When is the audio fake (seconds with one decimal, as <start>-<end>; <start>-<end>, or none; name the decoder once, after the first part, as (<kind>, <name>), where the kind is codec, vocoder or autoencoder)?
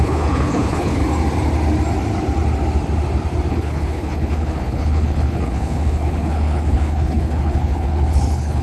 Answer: 0.0-1.0 (codec, HILCodec); 3.5-8.6